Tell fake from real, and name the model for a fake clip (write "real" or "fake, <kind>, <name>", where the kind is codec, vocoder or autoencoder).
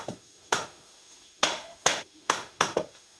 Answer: fake, autoencoder, DAC-VAE